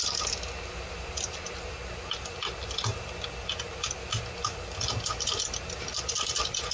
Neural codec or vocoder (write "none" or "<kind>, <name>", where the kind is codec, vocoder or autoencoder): none